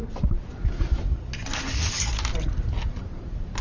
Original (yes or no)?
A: yes